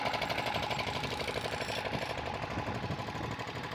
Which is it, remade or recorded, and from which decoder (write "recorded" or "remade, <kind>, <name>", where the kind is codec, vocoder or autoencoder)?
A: recorded